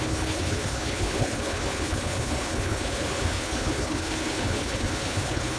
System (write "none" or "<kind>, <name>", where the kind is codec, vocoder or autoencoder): codec, HILCodec